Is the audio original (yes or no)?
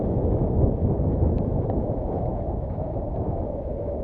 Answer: no